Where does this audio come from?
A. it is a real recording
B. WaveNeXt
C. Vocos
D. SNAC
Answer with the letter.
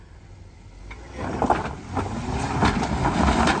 A